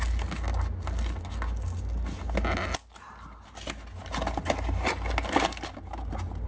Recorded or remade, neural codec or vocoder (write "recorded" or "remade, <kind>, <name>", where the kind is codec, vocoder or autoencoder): recorded